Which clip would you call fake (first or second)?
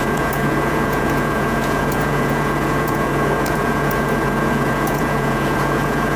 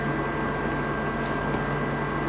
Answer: first